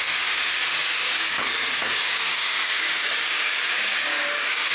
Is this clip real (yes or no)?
no